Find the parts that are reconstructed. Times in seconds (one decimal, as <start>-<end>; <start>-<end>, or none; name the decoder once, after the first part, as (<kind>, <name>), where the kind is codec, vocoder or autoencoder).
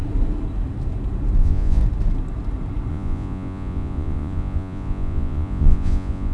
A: 1.4-1.8 (vocoder, Vocos); 2.9-6.3